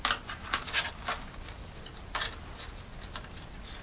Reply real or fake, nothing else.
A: real